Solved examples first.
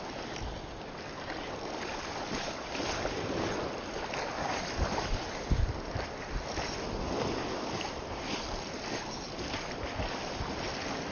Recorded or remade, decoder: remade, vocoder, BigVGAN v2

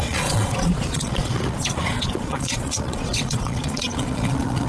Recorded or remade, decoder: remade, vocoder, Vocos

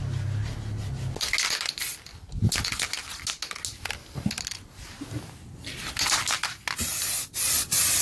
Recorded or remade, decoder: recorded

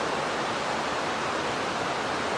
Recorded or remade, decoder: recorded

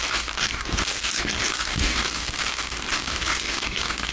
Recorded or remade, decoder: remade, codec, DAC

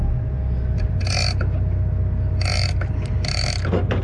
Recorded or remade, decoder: recorded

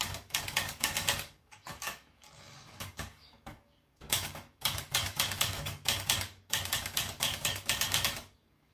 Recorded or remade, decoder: remade, codec, DAC